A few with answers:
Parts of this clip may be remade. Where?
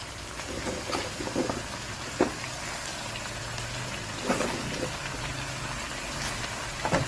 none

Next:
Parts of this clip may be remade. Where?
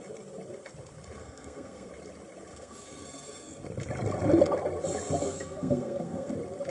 1.2-1.9 (codec, SNAC); 2.5-3.6; 5.2-6.3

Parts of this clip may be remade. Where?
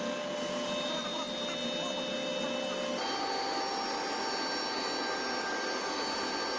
none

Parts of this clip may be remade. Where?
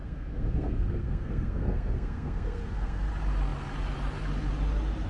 0.0-3.1 (codec, SNAC)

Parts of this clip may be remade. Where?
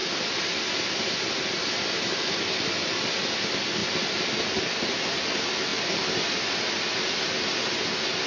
none